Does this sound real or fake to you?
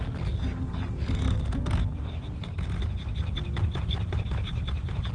real